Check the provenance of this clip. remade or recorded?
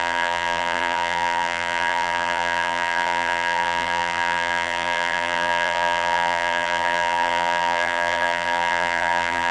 remade